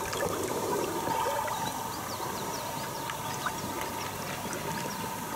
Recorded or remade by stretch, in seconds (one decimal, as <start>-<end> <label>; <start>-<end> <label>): 0.0-0.5 recorded; 0.5-3.7 remade; 3.7-5.4 recorded